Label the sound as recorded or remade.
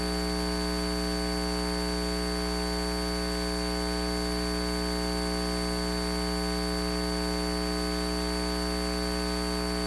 recorded